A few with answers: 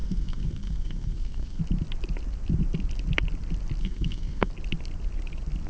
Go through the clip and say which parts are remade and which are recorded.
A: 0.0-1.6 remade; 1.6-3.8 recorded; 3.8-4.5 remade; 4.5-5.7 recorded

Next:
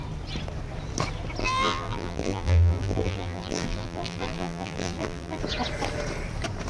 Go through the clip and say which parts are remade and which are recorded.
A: 0.0-1.4 recorded; 1.4-5.4 remade; 5.4-6.7 recorded

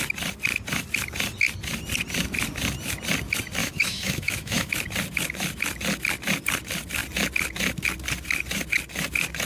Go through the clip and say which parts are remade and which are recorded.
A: 0.0-3.6 recorded; 3.6-4.7 remade; 4.7-9.5 recorded

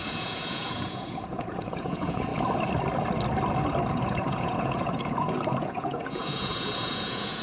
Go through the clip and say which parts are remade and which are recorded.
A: 0.0-2.3 remade; 2.3-3.9 recorded; 3.9-7.4 remade

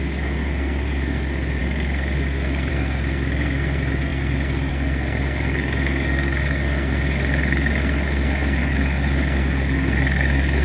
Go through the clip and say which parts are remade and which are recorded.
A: 0.0-10.6 remade

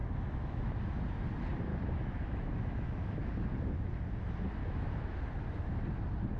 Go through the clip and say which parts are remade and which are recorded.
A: 0.0-0.8 remade; 0.8-1.7 recorded; 1.7-3.3 remade; 3.3-4.6 recorded; 4.6-5.2 remade; 5.2-6.4 recorded